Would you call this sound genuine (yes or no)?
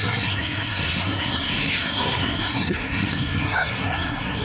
no